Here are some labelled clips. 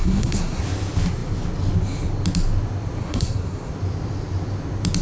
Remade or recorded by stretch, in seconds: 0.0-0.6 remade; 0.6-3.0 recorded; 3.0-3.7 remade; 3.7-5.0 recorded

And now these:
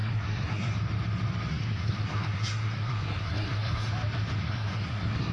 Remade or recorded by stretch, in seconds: 0.0-0.7 remade; 0.7-1.5 recorded; 1.5-3.9 remade; 3.9-4.4 recorded; 4.4-5.3 remade